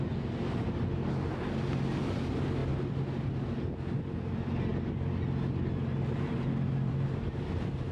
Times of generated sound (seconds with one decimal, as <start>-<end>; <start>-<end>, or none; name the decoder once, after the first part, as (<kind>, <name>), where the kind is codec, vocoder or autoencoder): none